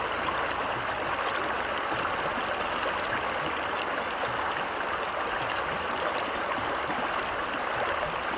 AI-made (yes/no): no